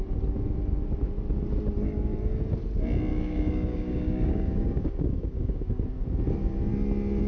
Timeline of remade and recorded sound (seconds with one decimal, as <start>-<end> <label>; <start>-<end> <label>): 0.0-3.1 recorded; 3.1-5.7 remade; 5.7-7.3 recorded